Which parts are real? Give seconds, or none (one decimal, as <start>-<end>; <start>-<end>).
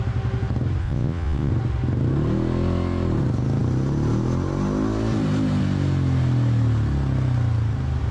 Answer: 0.0-0.8; 1.5-8.1